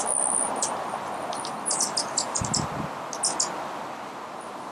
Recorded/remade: recorded